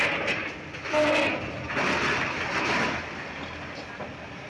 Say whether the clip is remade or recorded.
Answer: recorded